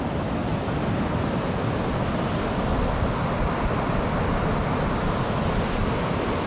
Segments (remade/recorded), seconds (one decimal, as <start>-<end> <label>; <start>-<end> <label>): 0.0-6.5 recorded